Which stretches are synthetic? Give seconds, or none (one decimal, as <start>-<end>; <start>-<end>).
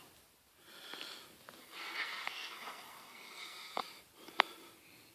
1.6-3.8